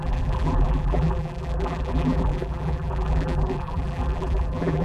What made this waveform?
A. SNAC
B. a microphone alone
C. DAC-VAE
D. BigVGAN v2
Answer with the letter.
D